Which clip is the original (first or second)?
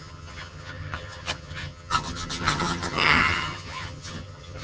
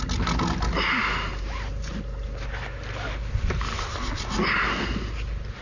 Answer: second